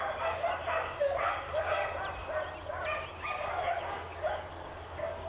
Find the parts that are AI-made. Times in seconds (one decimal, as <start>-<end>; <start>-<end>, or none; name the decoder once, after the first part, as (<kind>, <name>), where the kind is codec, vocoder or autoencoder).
0.0-1.8 (codec, DAC); 3.1-5.3